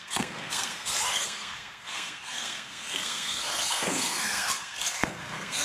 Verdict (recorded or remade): remade